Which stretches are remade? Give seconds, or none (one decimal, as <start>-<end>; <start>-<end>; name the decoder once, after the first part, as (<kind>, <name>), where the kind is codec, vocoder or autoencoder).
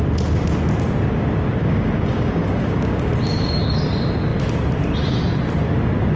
1.6-3.1 (codec, DAC)